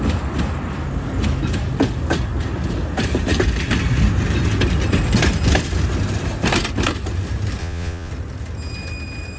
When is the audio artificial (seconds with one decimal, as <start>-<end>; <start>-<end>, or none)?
7.6-8.1